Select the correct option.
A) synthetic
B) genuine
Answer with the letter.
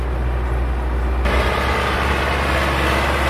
B